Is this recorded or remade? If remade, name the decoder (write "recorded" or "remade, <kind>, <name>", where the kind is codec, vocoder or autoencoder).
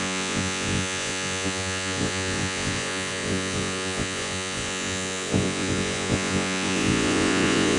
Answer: remade, vocoder, Vocos